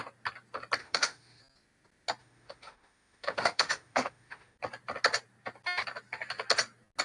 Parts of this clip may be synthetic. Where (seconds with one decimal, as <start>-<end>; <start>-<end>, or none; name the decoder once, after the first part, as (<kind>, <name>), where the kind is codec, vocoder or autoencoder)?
0.8-1.4 (autoencoder, DAC-VAE); 2.2-4.6